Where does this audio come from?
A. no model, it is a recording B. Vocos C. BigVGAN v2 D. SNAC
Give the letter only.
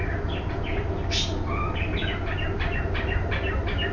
A